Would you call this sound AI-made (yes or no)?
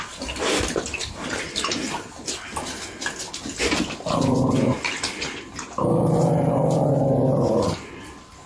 no